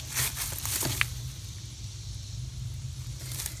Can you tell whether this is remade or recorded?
recorded